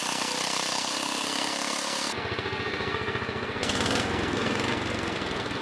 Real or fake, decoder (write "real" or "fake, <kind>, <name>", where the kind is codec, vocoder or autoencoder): fake, codec, SNAC